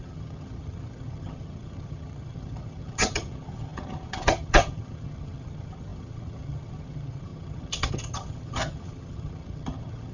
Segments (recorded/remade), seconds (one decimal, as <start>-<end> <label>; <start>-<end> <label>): 0.0-10.1 remade